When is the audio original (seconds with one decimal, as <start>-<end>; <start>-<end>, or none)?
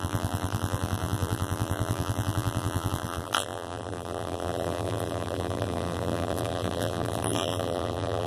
none